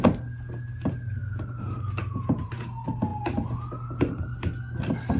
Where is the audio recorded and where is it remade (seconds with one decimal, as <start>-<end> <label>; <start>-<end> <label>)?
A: 0.0-5.2 recorded